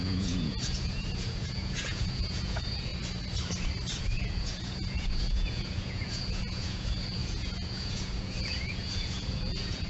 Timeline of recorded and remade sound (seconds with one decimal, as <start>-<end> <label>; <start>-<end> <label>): 0.0-2.9 remade; 2.9-4.0 recorded; 4.0-9.9 remade